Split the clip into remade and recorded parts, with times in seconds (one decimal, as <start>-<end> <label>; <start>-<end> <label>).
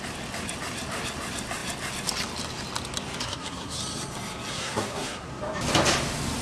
0.0-3.2 recorded; 3.2-3.8 remade; 3.8-4.5 recorded; 4.5-5.3 remade; 5.3-6.4 recorded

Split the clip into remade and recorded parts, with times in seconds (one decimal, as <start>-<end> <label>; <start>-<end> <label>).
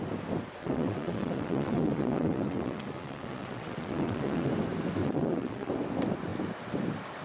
0.0-0.6 recorded; 0.6-4.5 remade; 4.5-5.0 recorded; 5.0-5.7 remade; 5.7-7.2 recorded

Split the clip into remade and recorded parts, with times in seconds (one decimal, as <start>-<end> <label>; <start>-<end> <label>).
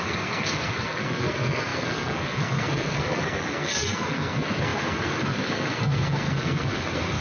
0.0-7.2 remade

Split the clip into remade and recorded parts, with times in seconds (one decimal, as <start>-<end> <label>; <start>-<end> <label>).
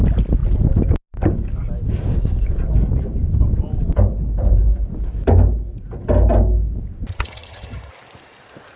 0.0-7.1 recorded; 7.1-7.9 remade; 7.9-8.8 recorded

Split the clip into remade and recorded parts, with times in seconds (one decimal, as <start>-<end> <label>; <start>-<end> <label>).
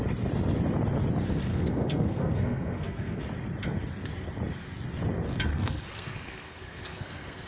0.0-1.5 recorded; 1.5-3.2 remade; 3.2-5.5 recorded; 5.5-7.5 remade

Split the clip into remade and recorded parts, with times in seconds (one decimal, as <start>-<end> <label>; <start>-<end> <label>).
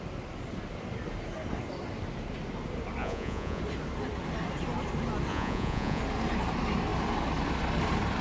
0.0-3.0 recorded; 3.0-3.6 remade; 3.6-5.3 recorded; 5.3-6.0 remade; 6.0-8.2 recorded